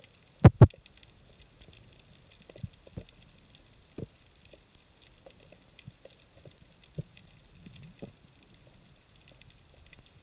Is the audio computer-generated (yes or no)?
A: no